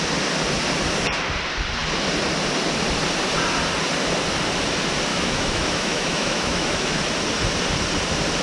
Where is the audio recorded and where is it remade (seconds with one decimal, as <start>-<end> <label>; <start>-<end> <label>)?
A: 0.0-5.1 recorded; 5.1-7.0 remade; 7.0-8.4 recorded